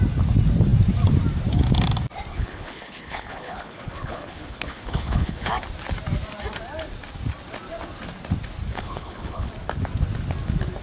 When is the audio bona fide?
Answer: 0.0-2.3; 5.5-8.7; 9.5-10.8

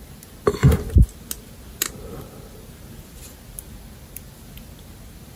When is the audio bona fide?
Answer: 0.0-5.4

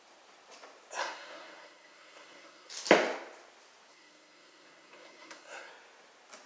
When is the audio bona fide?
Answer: 0.0-1.0; 2.7-3.9; 5.7-6.5

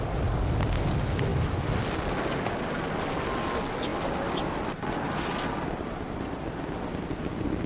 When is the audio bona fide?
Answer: 0.0-7.7

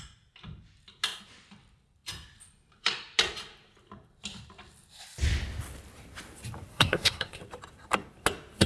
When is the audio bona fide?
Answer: 0.0-6.7; 7.4-8.7

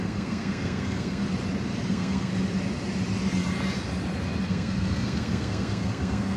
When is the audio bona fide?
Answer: 1.2-1.9; 2.3-4.5